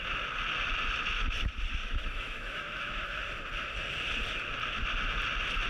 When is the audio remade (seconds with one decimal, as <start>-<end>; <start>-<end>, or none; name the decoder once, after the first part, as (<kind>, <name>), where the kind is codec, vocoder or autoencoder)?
1.8-3.2 (autoencoder, DAC-VAE)